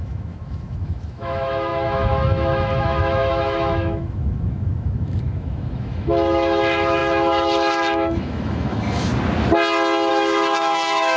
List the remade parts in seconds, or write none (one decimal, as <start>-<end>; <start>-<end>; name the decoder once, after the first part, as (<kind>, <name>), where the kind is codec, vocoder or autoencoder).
0.0-9.1 (autoencoder, DAC-VAE); 10.1-11.2